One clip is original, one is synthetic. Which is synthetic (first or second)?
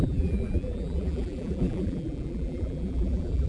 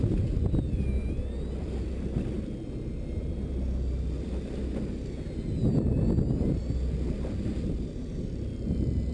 first